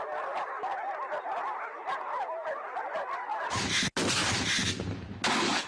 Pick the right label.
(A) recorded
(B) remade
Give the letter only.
A